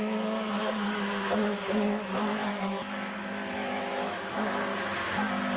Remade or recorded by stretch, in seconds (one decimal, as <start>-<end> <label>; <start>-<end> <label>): 0.0-4.7 remade; 4.7-5.6 recorded

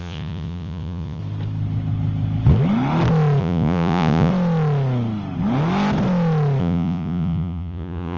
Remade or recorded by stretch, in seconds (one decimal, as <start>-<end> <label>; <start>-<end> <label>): 0.0-1.2 remade; 1.2-3.4 recorded; 3.4-4.3 remade; 4.3-6.6 recorded; 6.6-8.2 remade

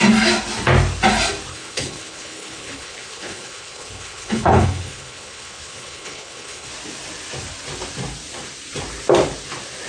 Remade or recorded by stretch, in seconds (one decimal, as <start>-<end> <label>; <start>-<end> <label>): 0.0-1.5 recorded; 1.5-6.7 remade; 6.7-9.9 recorded

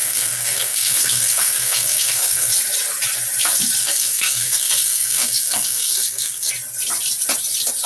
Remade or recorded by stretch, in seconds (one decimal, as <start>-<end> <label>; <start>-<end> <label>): 0.0-2.5 remade; 2.5-3.8 recorded; 3.8-6.5 remade; 6.5-7.9 recorded

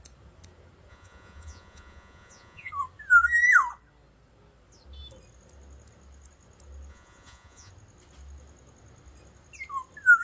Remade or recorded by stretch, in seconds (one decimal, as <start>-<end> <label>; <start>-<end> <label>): 0.0-0.9 recorded; 0.9-2.7 remade; 2.7-6.9 recorded; 6.9-7.7 remade; 7.7-10.2 recorded

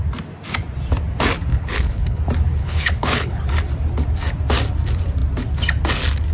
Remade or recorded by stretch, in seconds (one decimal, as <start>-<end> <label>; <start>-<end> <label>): 0.0-1.5 recorded; 1.5-2.2 remade; 2.2-2.6 recorded; 2.6-3.4 remade; 3.4-6.3 recorded

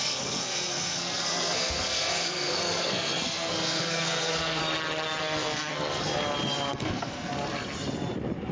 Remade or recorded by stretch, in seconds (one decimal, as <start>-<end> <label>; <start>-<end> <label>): 0.0-4.6 remade; 4.6-5.2 recorded; 5.2-6.1 remade; 6.1-6.7 recorded; 6.7-7.3 remade; 7.3-8.5 recorded